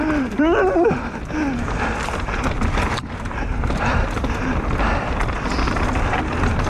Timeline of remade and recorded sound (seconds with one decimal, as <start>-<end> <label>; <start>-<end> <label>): 0.0-2.9 recorded; 2.9-4.4 remade; 4.4-6.7 recorded